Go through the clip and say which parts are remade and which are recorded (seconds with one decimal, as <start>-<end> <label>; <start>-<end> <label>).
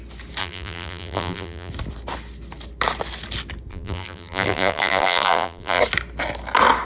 0.0-0.4 recorded; 0.4-1.7 remade; 1.7-3.7 recorded; 3.7-5.8 remade; 5.8-6.9 recorded